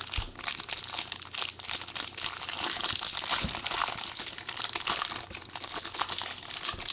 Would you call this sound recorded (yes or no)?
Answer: yes